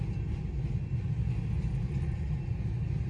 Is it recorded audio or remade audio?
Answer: recorded